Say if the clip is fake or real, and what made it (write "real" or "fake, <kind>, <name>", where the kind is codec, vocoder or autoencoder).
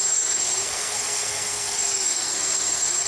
fake, codec, SNAC